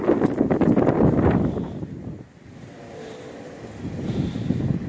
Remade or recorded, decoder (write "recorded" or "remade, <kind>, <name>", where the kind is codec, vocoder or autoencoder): recorded